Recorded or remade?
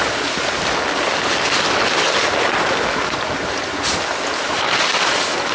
recorded